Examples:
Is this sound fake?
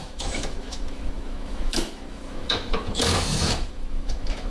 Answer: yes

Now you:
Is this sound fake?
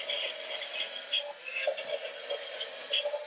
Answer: no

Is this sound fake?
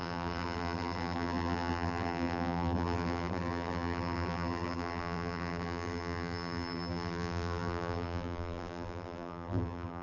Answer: yes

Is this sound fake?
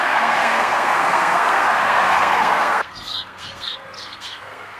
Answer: yes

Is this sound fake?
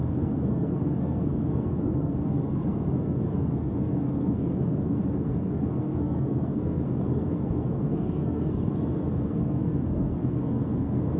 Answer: yes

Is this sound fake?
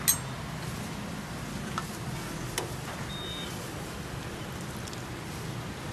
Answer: no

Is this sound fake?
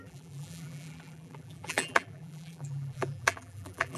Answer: yes